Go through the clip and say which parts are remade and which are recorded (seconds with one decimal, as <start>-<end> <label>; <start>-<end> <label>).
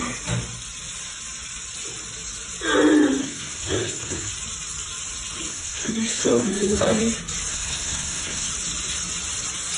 0.0-3.2 recorded; 3.2-4.3 remade; 4.3-5.5 recorded; 5.5-7.0 remade; 7.0-7.5 recorded; 7.5-8.5 remade; 8.5-9.8 recorded